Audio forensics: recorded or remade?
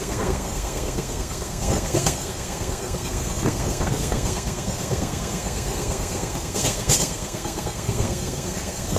remade